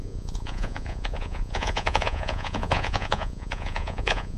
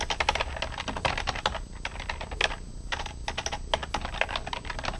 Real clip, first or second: second